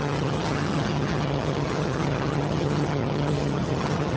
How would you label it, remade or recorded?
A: remade